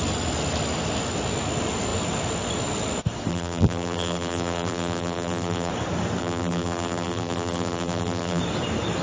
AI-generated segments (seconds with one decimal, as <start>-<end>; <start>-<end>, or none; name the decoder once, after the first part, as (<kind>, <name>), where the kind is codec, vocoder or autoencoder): 3.3-5.7 (vocoder, BigVGAN v2); 6.2-8.4